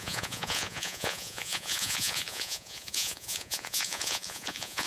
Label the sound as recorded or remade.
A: remade